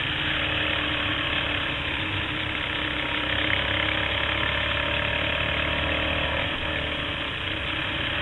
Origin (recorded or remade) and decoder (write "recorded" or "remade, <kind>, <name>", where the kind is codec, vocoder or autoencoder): recorded